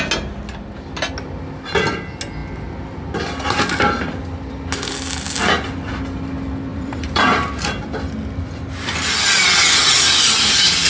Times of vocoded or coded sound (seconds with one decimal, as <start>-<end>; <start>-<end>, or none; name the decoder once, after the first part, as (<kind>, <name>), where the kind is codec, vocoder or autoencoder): 6.7-7.8 (vocoder, BigVGAN v2)